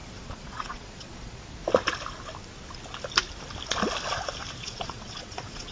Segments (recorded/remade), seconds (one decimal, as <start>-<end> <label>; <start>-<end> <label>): 0.0-1.4 remade; 1.4-4.6 recorded; 4.6-5.7 remade